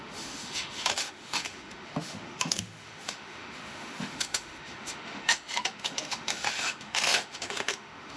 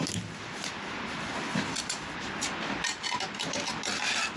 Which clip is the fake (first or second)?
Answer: first